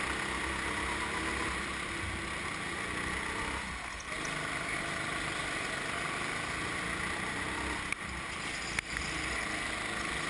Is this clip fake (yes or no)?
no